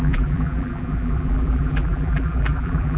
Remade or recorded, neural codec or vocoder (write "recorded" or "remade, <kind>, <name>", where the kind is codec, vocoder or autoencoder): remade, vocoder, BigVGAN v2